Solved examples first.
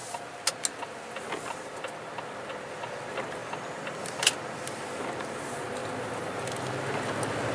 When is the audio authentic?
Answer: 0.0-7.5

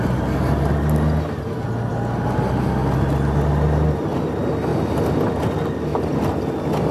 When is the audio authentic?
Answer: 0.0-6.9

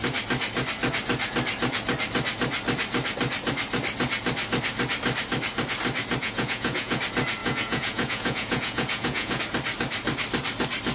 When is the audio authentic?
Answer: 0.0-6.2; 7.0-7.4; 9.4-10.9

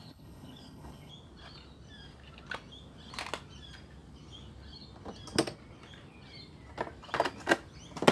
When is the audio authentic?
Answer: 1.1-8.1

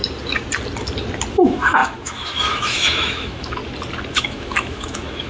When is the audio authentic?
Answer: 0.0-1.3; 3.6-4.1

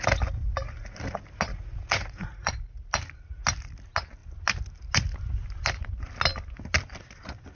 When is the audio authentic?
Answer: 0.0-1.5; 2.5-7.5

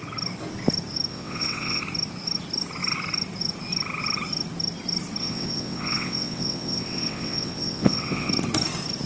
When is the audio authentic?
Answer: 0.0-1.1; 1.8-5.2; 8.3-9.1

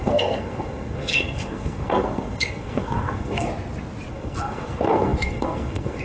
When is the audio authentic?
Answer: 3.5-4.1